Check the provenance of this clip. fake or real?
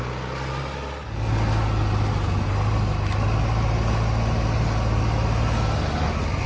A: real